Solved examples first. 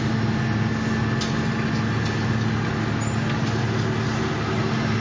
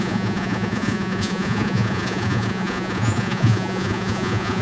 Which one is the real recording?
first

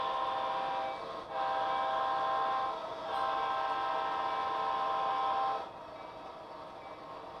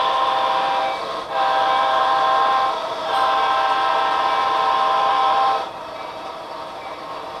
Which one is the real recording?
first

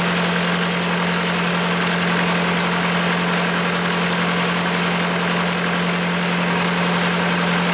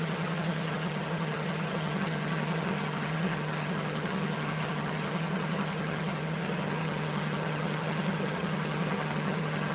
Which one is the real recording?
first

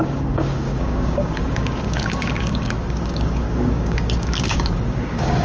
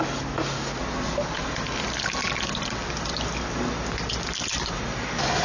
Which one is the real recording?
second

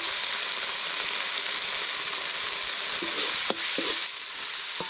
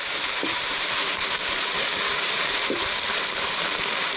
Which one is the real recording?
first